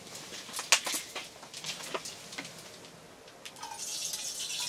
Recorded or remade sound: recorded